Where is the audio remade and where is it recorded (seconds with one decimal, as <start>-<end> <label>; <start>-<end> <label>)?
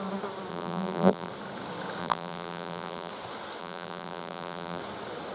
0.0-0.5 recorded; 0.5-1.3 remade; 1.3-2.0 recorded; 2.0-3.1 remade; 3.1-3.6 recorded; 3.6-4.8 remade; 4.8-5.3 recorded